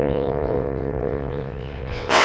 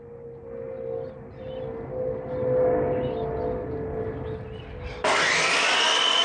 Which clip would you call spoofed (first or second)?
first